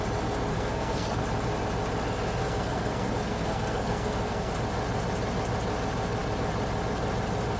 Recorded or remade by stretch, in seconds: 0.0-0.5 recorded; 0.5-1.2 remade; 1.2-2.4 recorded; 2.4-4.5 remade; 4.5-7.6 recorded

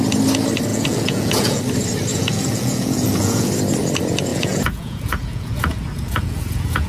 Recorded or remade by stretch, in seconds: 0.0-0.7 recorded; 0.7-1.6 remade; 1.6-2.1 recorded; 2.1-3.5 remade; 3.5-4.3 recorded; 4.3-6.9 remade

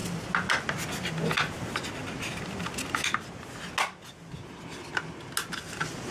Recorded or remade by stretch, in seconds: 0.0-6.1 recorded

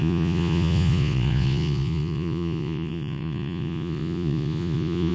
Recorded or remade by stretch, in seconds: 0.0-5.1 remade

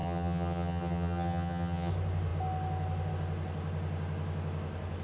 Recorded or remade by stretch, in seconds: 0.0-1.9 remade; 1.9-5.0 recorded